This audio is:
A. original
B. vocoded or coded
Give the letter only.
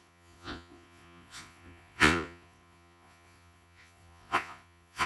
B